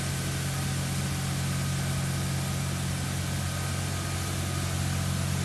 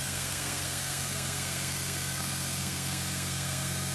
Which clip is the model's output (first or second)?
second